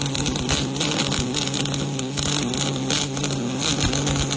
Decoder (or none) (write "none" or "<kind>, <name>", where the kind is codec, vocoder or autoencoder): none